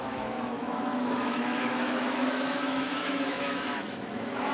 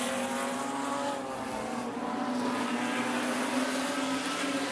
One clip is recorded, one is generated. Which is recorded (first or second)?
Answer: second